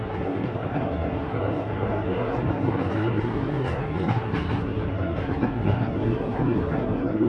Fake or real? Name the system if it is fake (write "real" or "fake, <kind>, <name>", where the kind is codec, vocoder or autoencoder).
fake, codec, SNAC